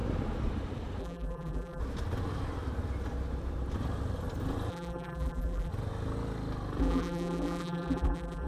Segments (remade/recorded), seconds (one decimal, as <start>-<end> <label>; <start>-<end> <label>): 0.0-1.0 recorded; 1.0-1.8 remade; 1.8-4.7 recorded; 4.7-5.7 remade; 5.7-6.8 recorded; 6.8-8.5 remade